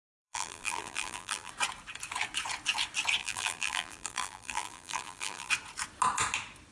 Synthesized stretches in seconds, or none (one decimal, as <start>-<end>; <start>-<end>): 0.0-1.5; 3.2-5.5